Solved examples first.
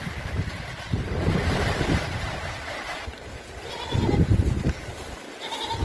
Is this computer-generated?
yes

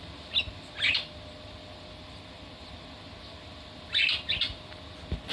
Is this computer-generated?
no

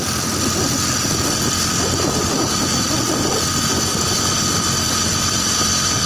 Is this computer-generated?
yes